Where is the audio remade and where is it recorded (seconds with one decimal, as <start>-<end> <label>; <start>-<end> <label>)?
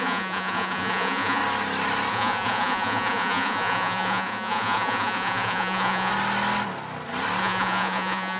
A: 0.0-1.4 remade; 1.4-2.1 recorded; 2.1-6.1 remade; 6.1-7.4 recorded; 7.4-8.4 remade